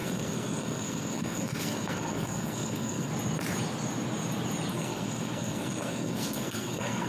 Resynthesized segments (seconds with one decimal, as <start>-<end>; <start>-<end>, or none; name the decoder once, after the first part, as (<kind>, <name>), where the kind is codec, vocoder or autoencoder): 0.0-3.1 (codec, SNAC); 4.7-7.1

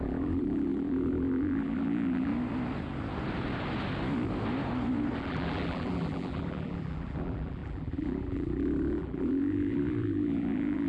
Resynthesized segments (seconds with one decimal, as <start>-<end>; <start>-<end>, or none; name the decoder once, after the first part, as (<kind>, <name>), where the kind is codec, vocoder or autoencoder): 0.0-2.3 (vocoder, BigVGAN v2); 5.2-10.9